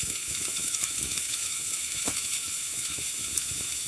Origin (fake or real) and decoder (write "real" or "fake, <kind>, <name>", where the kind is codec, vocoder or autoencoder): fake, autoencoder, DAC-VAE